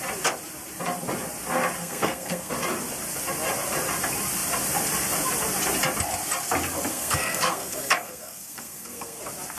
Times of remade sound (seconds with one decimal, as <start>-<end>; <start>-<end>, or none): 1.8-2.5; 6.9-9.2